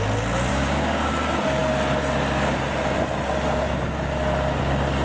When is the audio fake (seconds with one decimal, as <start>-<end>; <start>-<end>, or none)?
0.5-1.1